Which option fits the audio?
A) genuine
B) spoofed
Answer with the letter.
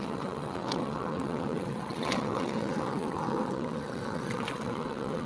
B